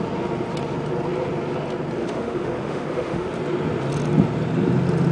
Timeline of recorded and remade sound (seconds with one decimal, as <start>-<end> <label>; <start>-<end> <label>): 0.0-2.0 recorded; 2.0-3.3 remade; 3.3-5.1 recorded